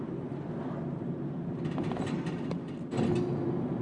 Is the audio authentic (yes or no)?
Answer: yes